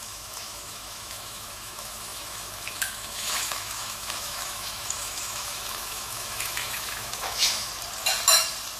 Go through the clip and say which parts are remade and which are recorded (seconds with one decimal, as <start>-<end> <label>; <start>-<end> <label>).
0.0-7.7 remade; 7.7-8.8 recorded